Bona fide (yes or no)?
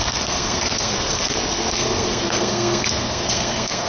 no